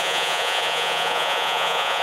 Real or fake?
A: fake